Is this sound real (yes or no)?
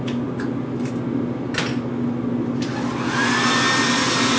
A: yes